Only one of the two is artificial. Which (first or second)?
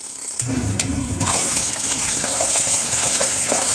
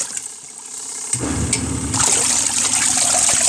first